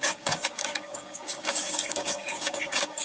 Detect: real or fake fake